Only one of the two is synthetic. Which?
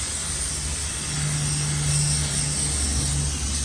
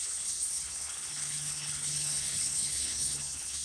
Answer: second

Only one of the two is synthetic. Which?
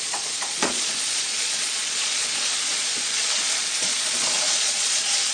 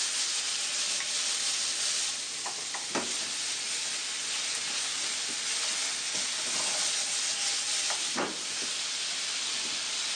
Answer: first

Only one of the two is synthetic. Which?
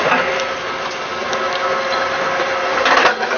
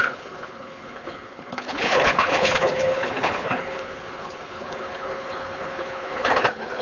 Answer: second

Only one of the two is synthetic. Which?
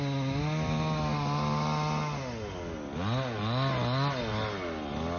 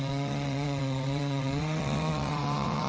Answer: second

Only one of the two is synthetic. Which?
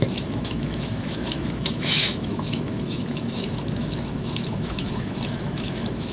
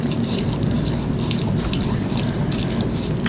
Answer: first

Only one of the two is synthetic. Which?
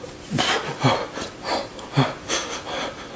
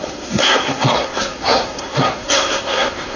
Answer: second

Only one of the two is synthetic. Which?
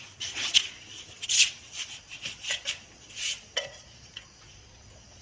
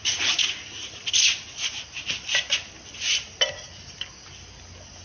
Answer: first